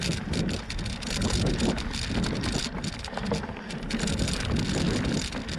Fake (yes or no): no